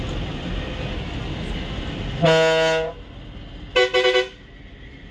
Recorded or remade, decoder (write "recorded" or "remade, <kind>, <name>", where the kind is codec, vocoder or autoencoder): recorded